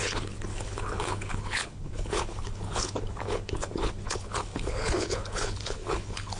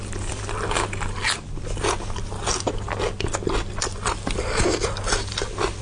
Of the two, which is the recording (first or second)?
second